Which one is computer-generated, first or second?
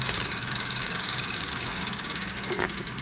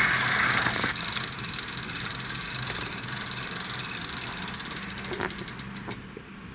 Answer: first